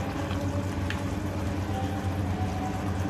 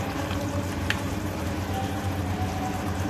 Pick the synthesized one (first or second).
second